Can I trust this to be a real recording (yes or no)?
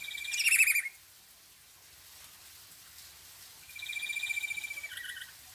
yes